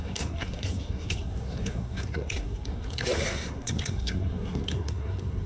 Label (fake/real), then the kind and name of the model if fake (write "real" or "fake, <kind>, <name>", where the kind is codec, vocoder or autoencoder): fake, codec, SNAC